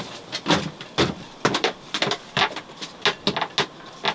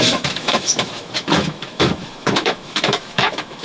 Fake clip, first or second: second